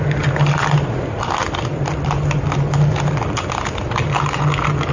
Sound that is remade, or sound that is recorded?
recorded